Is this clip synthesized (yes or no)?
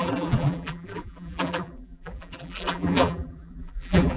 yes